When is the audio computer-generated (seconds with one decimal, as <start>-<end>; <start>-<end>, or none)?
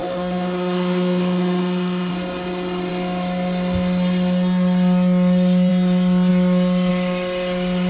0.0-2.1